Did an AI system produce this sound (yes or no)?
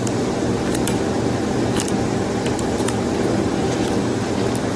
yes